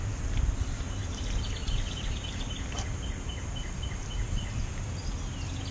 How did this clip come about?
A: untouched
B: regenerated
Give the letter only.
A